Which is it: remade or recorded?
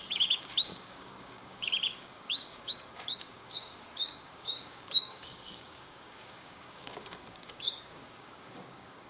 remade